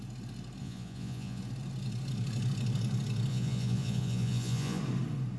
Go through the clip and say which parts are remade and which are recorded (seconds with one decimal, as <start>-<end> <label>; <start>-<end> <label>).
0.0-0.6 recorded; 0.6-1.4 remade; 1.4-3.3 recorded; 3.3-4.8 remade; 4.8-5.4 recorded